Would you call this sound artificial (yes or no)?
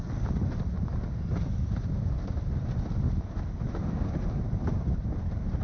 no